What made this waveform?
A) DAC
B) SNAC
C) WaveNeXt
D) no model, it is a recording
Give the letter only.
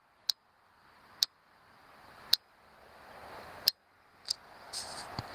D